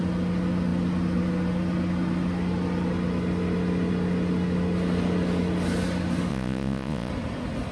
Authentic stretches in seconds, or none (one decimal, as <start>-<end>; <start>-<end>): 0.0-6.3; 7.1-7.7